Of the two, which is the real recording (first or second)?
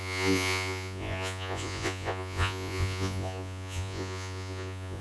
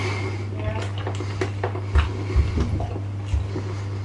second